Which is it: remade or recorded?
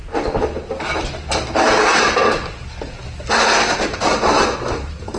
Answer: recorded